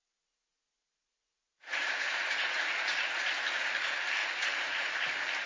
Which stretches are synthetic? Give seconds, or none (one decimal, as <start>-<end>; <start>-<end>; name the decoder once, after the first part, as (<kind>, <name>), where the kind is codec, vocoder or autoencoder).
0.0-3.3 (vocoder, Vocos); 4.2-5.1